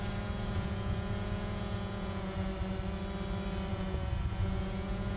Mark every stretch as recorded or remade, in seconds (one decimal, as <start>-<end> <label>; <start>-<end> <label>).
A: 0.0-2.5 remade; 2.5-3.7 recorded; 3.7-5.2 remade